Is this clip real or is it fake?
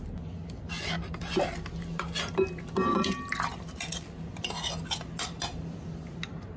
real